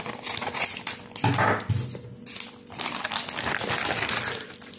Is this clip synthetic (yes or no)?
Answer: no